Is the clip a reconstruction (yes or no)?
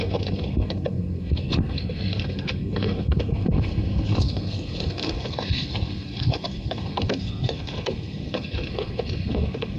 yes